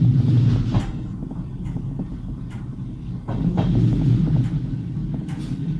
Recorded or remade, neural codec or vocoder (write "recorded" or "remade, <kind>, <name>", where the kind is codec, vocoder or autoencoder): recorded